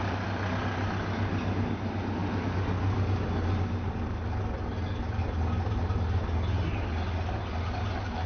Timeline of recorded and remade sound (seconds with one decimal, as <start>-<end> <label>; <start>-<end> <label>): 0.0-8.3 recorded